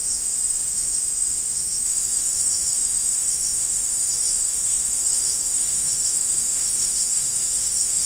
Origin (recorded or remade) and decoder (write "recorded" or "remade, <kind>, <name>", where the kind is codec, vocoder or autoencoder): remade, autoencoder, DAC-VAE